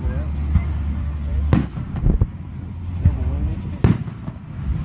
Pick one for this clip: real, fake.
real